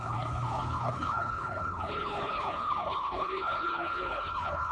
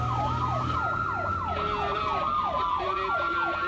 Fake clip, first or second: first